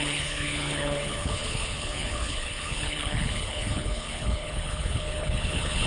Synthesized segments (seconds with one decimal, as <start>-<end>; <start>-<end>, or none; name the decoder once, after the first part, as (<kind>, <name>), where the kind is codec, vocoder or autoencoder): 0.0-5.9 (codec, HILCodec)